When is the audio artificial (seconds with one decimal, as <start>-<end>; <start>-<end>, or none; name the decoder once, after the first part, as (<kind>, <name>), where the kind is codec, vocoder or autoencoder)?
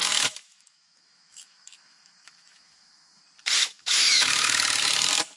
0.0-3.2 (autoencoder, DAC-VAE); 3.6-4.8